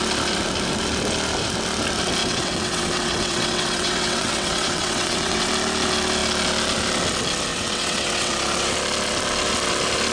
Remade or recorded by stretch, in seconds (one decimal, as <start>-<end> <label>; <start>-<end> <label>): 0.0-2.2 recorded; 2.2-5.5 remade; 5.5-7.5 recorded; 7.5-8.3 remade; 8.3-10.1 recorded